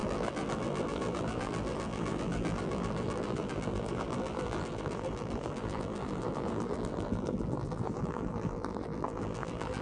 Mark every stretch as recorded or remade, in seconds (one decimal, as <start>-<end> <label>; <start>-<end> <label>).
0.0-9.8 remade